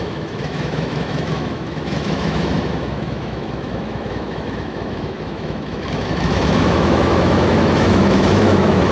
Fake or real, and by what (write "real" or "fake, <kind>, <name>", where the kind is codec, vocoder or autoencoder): fake, autoencoder, DAC-VAE